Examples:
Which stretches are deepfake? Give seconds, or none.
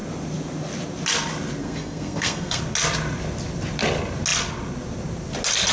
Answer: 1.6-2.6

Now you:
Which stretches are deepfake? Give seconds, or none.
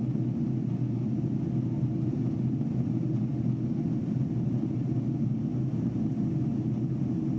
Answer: none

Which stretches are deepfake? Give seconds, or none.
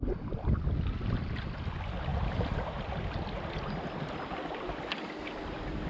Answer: none